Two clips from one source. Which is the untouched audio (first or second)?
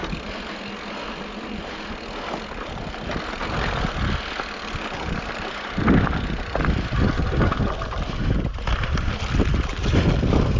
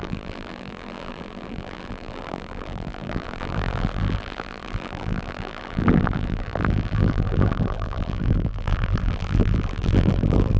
first